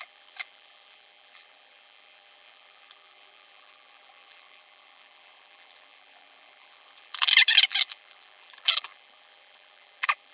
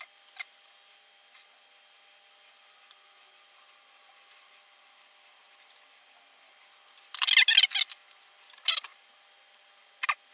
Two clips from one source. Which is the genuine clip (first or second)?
second